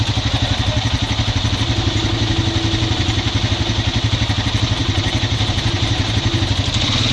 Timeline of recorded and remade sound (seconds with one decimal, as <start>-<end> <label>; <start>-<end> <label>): 0.0-4.8 recorded; 4.8-6.4 remade; 6.4-7.1 recorded

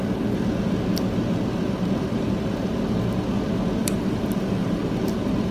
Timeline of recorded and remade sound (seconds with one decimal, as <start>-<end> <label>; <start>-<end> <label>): 0.0-3.8 recorded; 3.8-4.8 remade; 4.8-5.5 recorded

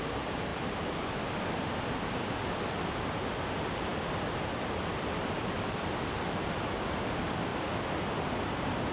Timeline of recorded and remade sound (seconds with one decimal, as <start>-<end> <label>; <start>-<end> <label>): 0.0-0.5 recorded; 0.5-1.9 remade; 1.9-3.9 recorded; 3.9-6.0 remade; 6.0-7.5 recorded; 7.5-8.3 remade; 8.3-8.9 recorded

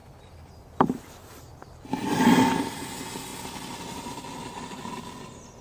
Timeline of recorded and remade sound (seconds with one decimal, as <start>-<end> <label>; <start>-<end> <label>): 0.0-2.5 remade; 2.5-5.6 recorded